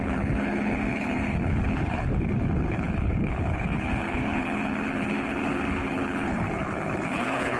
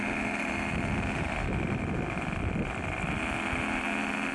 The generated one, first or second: first